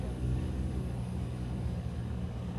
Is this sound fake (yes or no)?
yes